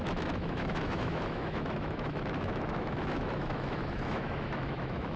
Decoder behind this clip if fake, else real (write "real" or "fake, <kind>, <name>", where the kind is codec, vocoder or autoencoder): fake, autoencoder, DAC-VAE